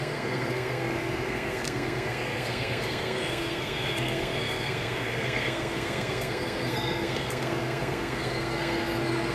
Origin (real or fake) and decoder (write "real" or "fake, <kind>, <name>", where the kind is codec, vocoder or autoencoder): fake, codec, SNAC